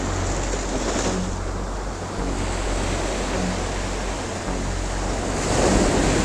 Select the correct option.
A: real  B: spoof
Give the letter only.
A